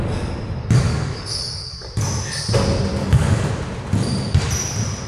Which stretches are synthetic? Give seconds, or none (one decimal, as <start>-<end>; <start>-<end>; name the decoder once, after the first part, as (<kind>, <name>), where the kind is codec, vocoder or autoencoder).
0.9-1.9 (codec, DAC); 3.0-3.5